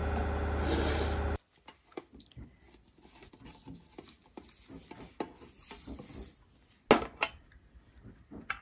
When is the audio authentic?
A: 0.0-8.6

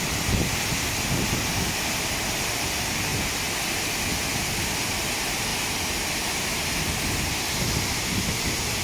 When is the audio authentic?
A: 0.0-8.8

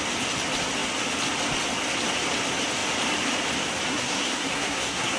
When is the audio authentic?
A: 0.0-3.9